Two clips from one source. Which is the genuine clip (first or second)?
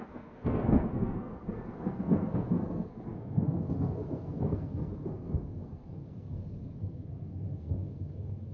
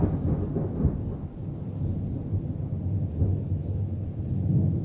second